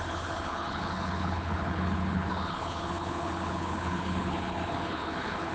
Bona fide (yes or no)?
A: no